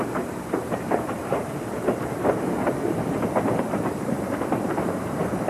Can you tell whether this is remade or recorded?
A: remade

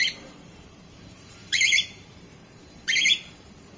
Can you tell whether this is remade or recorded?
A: remade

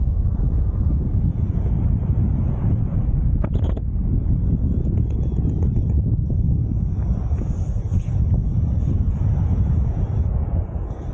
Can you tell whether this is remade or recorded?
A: remade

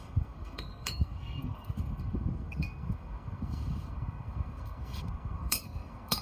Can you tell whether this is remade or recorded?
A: remade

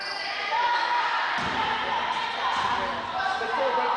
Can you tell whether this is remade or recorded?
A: recorded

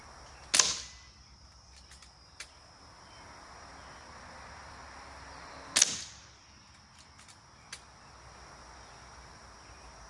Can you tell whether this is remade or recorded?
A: recorded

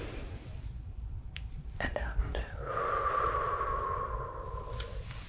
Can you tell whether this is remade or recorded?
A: remade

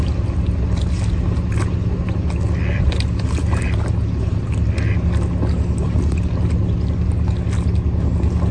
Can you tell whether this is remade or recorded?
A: recorded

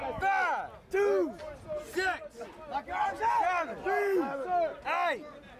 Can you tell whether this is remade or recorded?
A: recorded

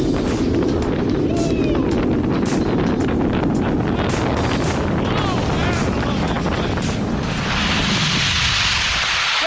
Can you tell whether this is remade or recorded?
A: recorded